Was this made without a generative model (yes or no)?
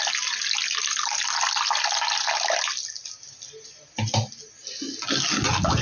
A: yes